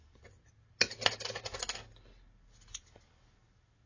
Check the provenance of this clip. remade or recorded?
recorded